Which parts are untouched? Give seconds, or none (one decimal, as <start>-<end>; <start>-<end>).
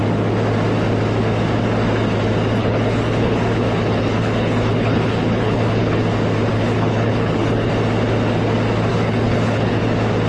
0.0-2.6; 6.0-6.5; 7.7-8.9; 9.8-10.3